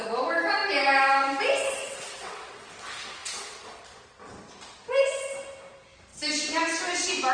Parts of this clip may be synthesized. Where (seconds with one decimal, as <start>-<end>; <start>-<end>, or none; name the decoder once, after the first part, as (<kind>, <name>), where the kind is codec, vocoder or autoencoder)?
1.8-2.7 (vocoder, WaveNeXt); 3.2-3.8